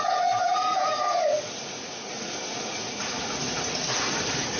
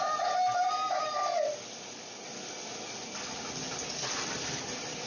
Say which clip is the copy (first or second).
first